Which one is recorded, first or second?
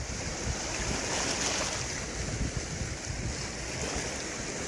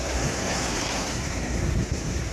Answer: first